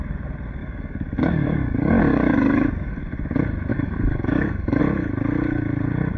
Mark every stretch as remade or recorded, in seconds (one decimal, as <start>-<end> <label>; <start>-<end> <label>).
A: 0.0-0.6 recorded; 0.6-3.0 remade; 3.0-3.7 recorded; 3.7-4.8 remade; 4.8-6.2 recorded